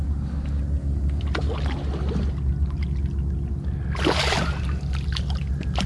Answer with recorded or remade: recorded